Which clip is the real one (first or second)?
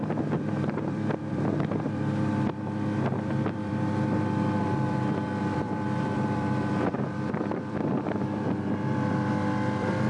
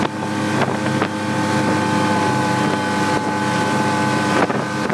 second